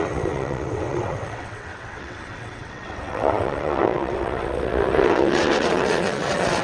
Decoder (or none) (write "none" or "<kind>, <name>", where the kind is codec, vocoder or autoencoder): vocoder, WaveNeXt